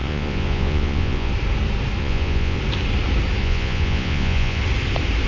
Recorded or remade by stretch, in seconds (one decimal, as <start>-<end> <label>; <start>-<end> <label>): 0.0-1.3 remade; 1.3-2.0 recorded; 2.0-2.6 remade; 2.6-3.4 recorded; 3.4-4.6 remade; 4.6-5.3 recorded